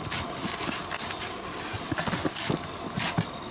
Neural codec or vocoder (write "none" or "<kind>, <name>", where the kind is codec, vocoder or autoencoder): none